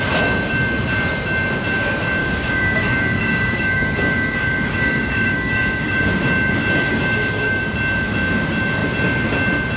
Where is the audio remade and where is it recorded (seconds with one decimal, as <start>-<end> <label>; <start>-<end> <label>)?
0.0-2.2 recorded; 2.2-6.0 remade; 6.0-6.9 recorded; 6.9-7.6 remade; 7.6-9.8 recorded